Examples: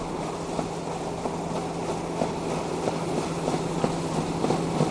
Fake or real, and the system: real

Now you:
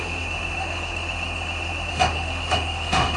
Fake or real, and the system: fake, autoencoder, DAC-VAE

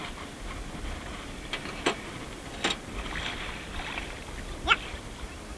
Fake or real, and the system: real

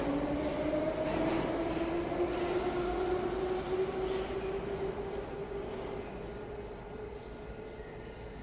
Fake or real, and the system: real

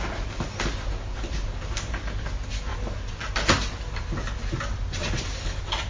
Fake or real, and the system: real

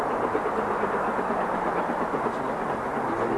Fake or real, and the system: real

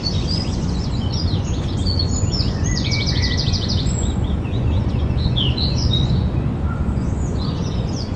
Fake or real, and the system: fake, vocoder, Vocos